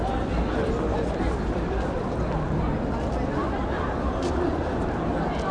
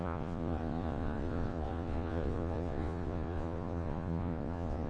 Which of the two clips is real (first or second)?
first